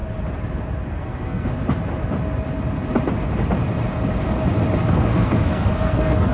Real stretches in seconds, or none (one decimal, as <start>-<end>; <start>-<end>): 0.0-0.9; 1.5-4.9